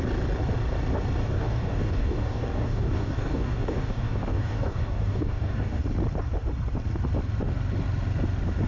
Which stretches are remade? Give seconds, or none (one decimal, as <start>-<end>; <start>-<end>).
1.2-5.8